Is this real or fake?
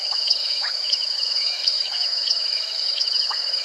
fake